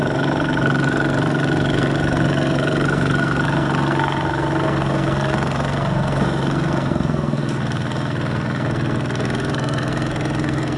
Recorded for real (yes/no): no